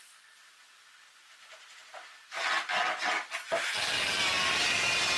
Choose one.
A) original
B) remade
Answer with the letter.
A